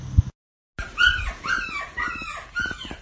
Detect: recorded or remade recorded